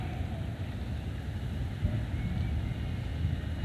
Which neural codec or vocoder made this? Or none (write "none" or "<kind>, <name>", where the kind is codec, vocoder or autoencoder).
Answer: none